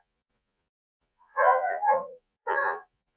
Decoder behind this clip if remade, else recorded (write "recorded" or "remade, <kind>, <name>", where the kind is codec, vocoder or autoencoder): remade, vocoder, Vocos